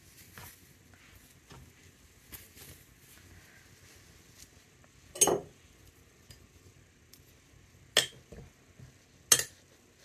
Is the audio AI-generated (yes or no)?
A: no